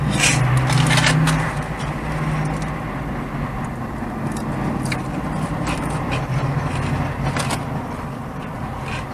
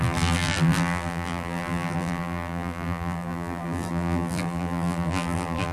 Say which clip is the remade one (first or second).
second